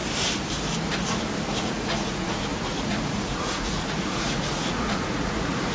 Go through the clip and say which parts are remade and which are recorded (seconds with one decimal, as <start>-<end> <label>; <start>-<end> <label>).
0.0-1.6 recorded; 1.6-5.7 remade